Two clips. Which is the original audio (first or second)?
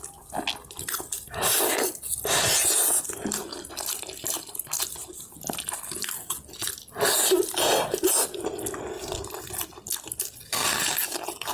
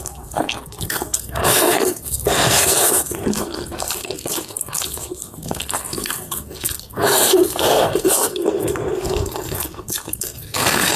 first